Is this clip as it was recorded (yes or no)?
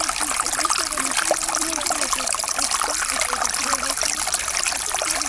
yes